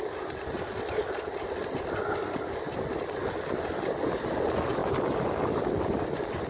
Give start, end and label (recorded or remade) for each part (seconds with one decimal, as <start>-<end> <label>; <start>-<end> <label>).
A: 0.0-6.5 recorded